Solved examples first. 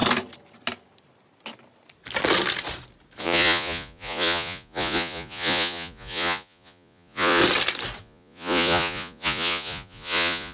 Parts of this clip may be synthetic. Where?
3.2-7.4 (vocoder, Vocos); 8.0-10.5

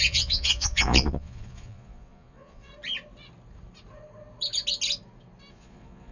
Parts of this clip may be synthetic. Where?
0.0-2.7 (vocoder, Vocos); 5.5-6.1

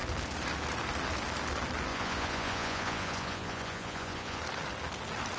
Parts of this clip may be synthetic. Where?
1.9-4.4 (vocoder, Vocos)

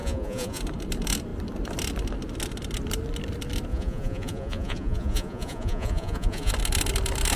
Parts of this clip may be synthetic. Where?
0.0-0.6 (vocoder, Vocos); 3.7-6.5

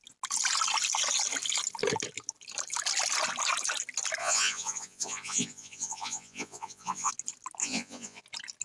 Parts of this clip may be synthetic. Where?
4.2-7.1 (vocoder, Vocos); 7.6-8.2

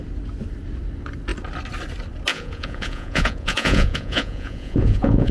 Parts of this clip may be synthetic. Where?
2.3-5.3 (vocoder, Vocos)